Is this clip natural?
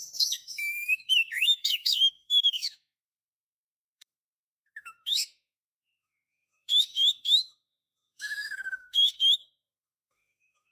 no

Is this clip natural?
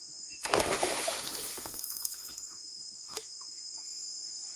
no